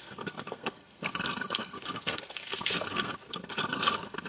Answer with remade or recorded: remade